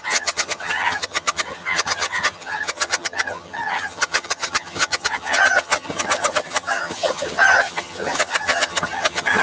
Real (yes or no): no